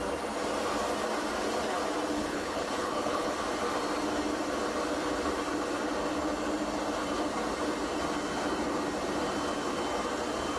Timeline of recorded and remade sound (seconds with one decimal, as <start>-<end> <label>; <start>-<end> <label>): 0.0-2.2 recorded; 2.2-3.3 remade; 3.3-10.6 recorded